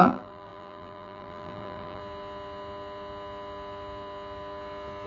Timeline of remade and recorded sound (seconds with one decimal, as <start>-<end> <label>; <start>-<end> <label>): 0.0-2.0 remade; 2.0-5.1 recorded